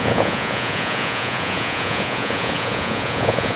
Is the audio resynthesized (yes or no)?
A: yes